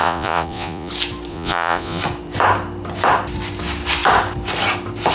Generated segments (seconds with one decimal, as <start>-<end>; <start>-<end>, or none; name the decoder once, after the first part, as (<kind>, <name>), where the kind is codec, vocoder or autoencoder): 0.0-0.9 (vocoder, Vocos); 1.3-2.0